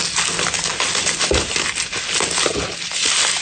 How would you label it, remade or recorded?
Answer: recorded